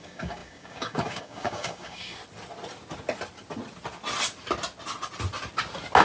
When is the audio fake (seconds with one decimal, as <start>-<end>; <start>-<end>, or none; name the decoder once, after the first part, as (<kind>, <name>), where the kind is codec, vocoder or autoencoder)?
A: 0.0-2.2 (codec, DAC)